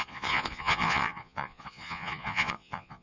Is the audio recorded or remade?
remade